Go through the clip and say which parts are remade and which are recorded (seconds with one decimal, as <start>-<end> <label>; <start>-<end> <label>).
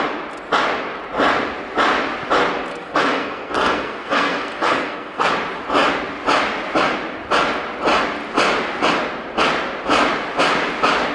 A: 0.0-2.7 recorded; 2.7-5.3 remade; 5.3-11.1 recorded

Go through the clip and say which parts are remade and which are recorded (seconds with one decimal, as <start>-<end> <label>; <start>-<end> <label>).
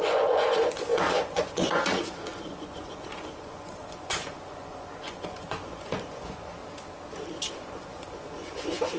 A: 0.0-6.6 remade; 6.6-7.5 recorded; 7.5-9.0 remade